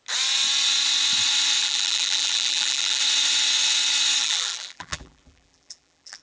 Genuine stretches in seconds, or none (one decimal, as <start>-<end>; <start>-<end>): 0.0-1.6; 3.0-4.2